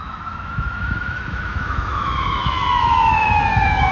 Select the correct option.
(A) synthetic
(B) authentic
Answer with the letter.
A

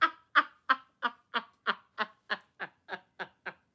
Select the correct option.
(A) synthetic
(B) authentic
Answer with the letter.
B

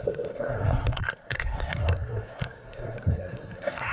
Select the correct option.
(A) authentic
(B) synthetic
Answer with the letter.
B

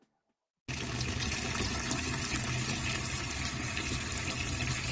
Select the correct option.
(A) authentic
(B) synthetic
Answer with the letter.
A